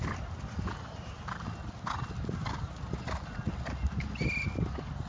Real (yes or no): yes